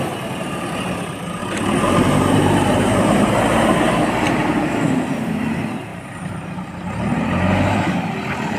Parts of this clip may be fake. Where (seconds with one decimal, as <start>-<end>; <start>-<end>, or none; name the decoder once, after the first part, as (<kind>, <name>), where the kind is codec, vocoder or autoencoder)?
1.4-3.9 (vocoder, BigVGAN v2); 4.4-5.5; 5.9-8.1